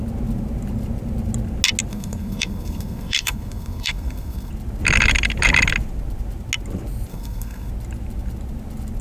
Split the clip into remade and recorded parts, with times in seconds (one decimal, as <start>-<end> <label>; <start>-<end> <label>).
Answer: 0.0-1.9 recorded; 1.9-4.5 remade; 4.5-7.1 recorded; 7.1-7.7 remade; 7.7-9.0 recorded